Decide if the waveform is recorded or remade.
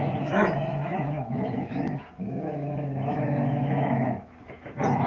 remade